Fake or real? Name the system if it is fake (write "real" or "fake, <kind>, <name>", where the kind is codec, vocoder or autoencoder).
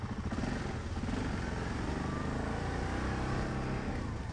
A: real